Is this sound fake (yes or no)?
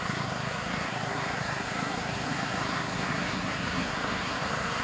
yes